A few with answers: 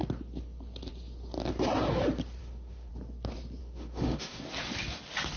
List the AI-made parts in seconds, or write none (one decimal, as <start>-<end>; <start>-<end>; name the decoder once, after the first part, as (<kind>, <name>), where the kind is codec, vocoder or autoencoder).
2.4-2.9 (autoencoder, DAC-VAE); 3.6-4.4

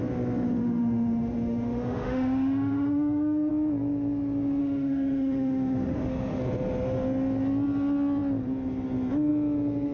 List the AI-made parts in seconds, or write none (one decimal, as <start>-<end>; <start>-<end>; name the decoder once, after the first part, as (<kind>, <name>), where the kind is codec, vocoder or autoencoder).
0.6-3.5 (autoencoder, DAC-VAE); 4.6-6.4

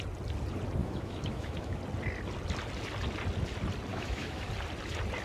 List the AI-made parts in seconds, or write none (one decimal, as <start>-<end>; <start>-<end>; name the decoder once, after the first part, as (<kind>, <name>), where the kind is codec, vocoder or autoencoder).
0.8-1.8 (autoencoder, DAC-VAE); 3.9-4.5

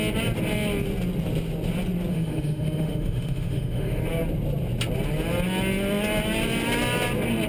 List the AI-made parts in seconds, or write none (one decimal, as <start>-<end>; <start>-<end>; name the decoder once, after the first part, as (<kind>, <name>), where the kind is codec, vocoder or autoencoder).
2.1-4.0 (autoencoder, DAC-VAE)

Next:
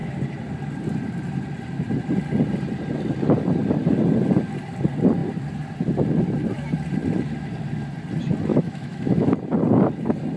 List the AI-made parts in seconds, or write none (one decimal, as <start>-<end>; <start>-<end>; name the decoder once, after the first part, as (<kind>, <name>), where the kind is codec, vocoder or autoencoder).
8.5-9.3 (autoencoder, DAC-VAE)

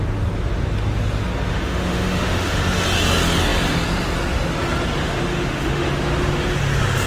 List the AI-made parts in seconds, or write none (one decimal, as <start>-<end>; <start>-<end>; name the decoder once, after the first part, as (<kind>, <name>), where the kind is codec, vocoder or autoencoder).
1.5-2.6 (autoencoder, DAC-VAE); 5.0-5.9